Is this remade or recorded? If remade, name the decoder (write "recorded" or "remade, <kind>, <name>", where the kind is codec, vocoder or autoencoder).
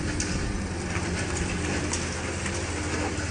recorded